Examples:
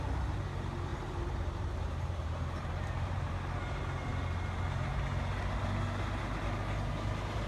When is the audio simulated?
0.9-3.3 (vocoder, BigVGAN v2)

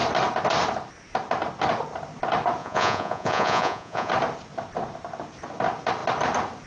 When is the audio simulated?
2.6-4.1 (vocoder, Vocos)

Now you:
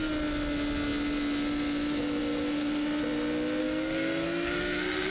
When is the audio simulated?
3.6-5.1 (codec, SNAC)

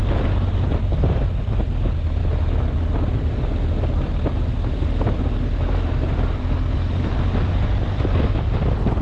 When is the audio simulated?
none